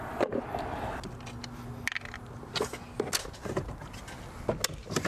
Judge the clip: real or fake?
real